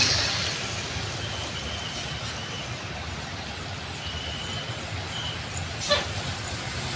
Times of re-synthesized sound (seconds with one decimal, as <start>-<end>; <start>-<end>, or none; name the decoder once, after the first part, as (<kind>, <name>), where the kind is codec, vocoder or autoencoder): none